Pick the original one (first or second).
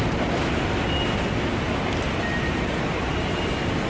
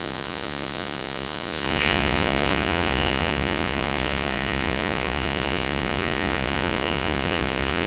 first